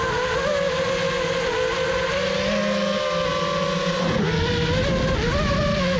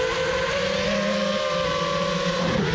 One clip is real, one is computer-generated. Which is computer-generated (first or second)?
second